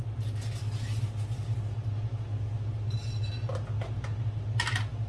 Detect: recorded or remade recorded